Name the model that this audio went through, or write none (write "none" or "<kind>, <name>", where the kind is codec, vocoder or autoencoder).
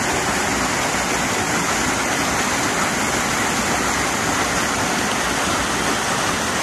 none